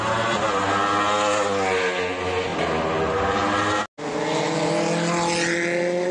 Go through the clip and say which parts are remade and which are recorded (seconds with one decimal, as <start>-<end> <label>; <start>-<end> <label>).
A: 0.0-6.1 recorded